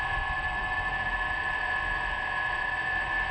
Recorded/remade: remade